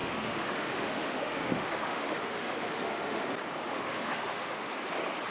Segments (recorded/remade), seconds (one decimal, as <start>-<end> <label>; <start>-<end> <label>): 0.0-3.2 remade; 3.2-3.6 recorded; 3.6-4.7 remade; 4.7-5.3 recorded